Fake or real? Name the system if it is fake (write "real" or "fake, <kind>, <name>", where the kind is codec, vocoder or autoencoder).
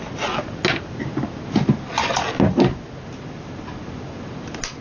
real